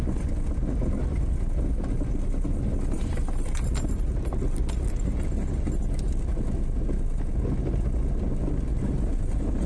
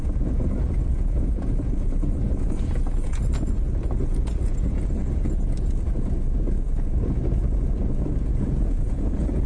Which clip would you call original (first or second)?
first